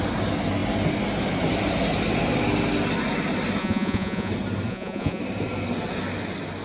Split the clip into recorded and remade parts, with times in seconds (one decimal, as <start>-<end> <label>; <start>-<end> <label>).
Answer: 0.0-3.6 recorded; 3.6-4.3 remade; 4.3-4.7 recorded; 4.7-5.2 remade; 5.2-6.6 recorded